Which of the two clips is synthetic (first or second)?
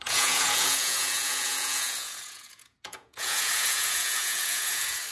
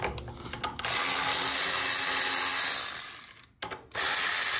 first